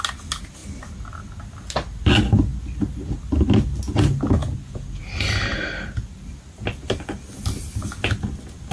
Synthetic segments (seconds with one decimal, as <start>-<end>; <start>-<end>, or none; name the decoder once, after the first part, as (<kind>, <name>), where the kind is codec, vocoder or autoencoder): 4.4-5.0 (vocoder, Vocos)